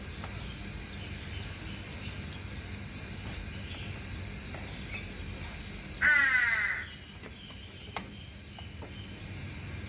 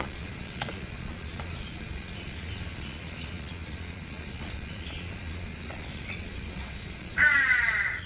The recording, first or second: first